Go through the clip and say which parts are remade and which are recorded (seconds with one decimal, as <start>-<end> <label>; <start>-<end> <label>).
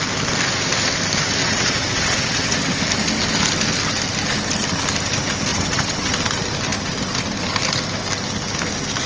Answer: 0.0-1.4 recorded; 1.4-2.7 remade; 2.7-5.5 recorded; 5.5-6.1 remade; 6.1-9.1 recorded